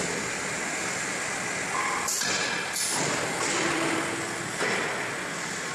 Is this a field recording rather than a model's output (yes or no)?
yes